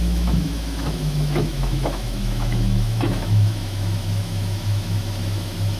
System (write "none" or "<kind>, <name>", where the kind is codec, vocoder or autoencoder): autoencoder, DAC-VAE